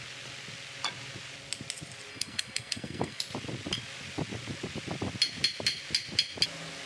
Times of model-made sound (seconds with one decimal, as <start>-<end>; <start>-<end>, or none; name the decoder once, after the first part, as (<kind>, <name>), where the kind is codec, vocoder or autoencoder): 2.1-3.2 (codec, SNAC)

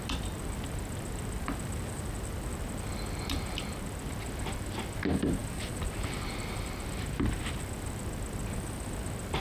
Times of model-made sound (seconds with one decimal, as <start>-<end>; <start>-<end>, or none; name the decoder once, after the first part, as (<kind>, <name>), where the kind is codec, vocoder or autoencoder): none

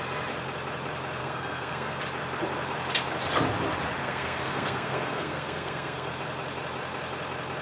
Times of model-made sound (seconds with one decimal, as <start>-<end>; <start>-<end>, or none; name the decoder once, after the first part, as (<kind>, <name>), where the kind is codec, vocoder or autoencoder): 1.2-2.0 (codec, SNAC); 4.0-6.1

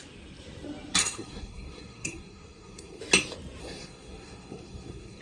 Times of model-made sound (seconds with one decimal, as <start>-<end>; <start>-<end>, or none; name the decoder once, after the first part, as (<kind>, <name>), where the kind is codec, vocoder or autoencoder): 1.0-3.0 (codec, SNAC); 3.6-5.2

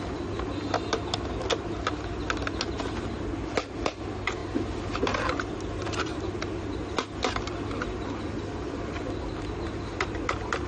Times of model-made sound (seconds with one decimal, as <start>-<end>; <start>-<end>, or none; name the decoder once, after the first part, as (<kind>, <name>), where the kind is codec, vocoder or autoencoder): none